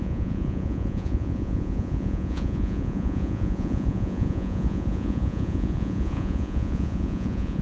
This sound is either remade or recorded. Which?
remade